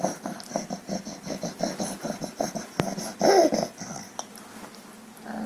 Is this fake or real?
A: real